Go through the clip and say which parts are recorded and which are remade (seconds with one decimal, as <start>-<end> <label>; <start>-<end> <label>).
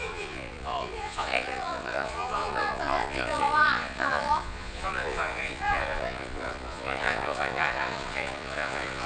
0.0-9.1 remade